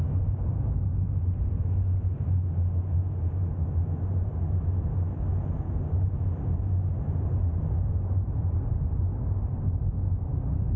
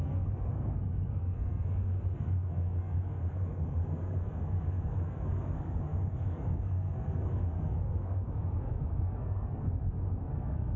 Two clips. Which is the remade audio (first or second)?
second